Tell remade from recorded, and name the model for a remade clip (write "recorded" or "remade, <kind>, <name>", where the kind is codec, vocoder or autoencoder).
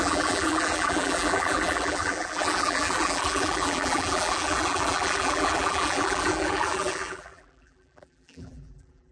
remade, vocoder, BigVGAN v2